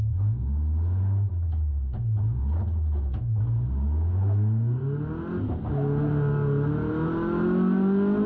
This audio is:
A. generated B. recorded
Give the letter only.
B